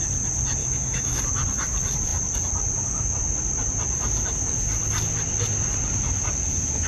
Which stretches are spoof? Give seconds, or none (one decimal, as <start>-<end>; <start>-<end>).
0.6-1.2